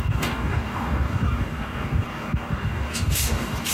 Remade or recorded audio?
remade